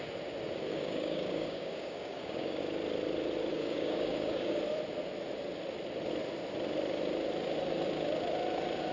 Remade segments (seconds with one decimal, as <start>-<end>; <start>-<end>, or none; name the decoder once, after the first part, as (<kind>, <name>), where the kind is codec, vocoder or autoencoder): 0.7-2.6 (codec, DAC); 3.5-4.6